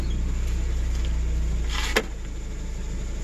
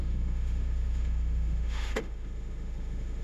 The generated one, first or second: second